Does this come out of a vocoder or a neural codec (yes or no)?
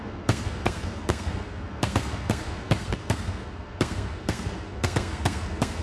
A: yes